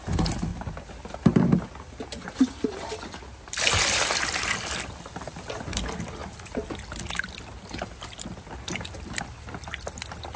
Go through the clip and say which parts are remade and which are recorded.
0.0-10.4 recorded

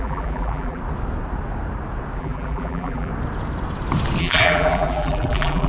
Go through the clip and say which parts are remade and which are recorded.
0.0-0.8 remade; 0.8-2.2 recorded; 2.2-3.1 remade; 3.1-4.2 recorded; 4.2-5.7 remade

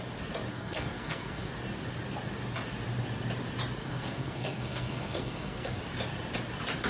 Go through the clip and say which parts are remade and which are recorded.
0.0-0.5 recorded; 0.5-1.5 remade; 1.5-3.8 recorded; 3.8-5.8 remade; 5.8-6.9 recorded

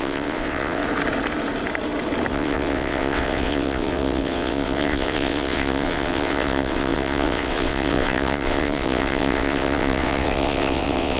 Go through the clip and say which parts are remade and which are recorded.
0.0-0.8 remade; 0.8-2.3 recorded; 2.3-11.2 remade

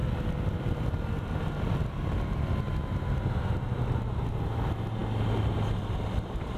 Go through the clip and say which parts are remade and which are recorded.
0.0-6.6 recorded

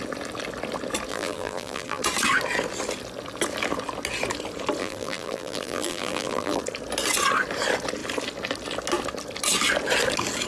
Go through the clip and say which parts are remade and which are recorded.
0.0-1.1 recorded; 1.1-2.0 remade; 2.0-4.8 recorded; 4.8-6.6 remade; 6.6-10.5 recorded

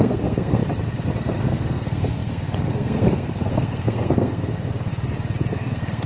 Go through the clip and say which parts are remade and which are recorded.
0.0-0.6 remade; 0.6-1.4 recorded; 1.4-4.9 remade; 4.9-5.5 recorded; 5.5-6.1 remade

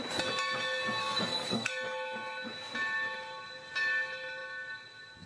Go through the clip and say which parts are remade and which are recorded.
0.0-1.0 recorded; 1.0-1.7 remade; 1.7-5.3 recorded